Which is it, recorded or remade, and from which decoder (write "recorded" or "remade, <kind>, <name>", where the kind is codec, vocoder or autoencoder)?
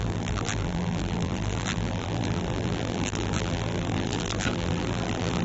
remade, vocoder, BigVGAN v2